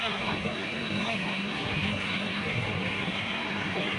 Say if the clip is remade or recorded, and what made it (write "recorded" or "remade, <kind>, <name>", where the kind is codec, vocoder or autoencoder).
remade, codec, SNAC